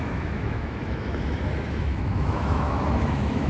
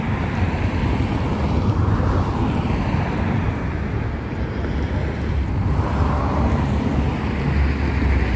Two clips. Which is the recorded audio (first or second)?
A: second